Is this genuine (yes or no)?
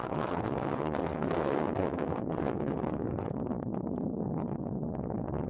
no